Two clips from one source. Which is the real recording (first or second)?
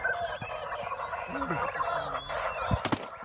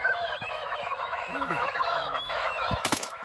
first